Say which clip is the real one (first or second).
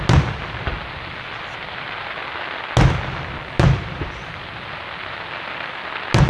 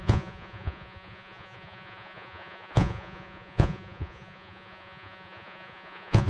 first